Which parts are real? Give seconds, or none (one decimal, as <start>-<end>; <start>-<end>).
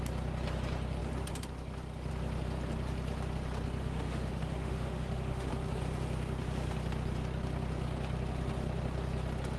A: 0.0-3.8; 5.5-9.6